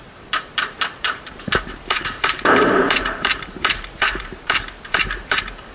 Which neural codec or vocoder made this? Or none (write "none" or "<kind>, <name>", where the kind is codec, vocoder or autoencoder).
vocoder, BigVGAN v2